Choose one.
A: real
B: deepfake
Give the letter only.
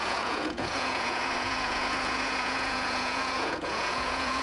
B